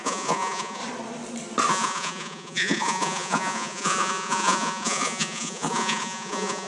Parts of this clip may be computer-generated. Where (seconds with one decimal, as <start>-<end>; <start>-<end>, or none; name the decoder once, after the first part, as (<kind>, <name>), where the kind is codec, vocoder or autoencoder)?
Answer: 0.0-0.8 (vocoder, Vocos); 1.7-6.7